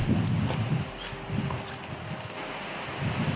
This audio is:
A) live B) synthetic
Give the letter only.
A